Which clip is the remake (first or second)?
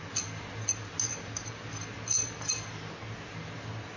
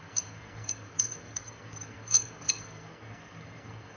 second